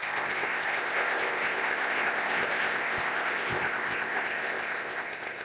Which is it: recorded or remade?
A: remade